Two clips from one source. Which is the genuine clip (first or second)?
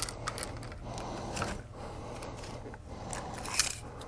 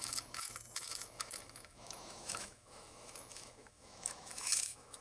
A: first